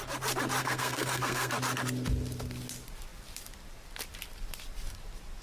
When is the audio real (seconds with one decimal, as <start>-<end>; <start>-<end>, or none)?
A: 0.0-0.6; 1.5-5.4